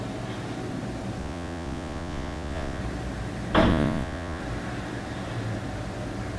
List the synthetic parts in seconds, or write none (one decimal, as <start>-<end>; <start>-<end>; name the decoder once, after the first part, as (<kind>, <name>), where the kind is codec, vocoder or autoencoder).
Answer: 1.2-2.8 (vocoder, Vocos); 3.7-4.4